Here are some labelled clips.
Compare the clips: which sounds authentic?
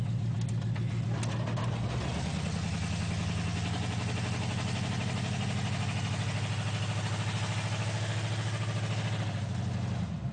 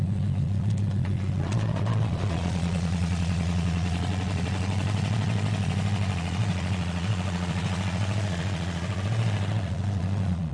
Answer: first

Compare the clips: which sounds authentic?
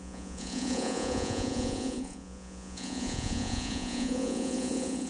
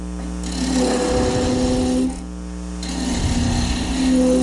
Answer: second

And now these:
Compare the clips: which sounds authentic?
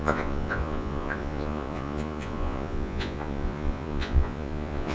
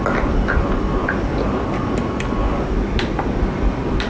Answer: second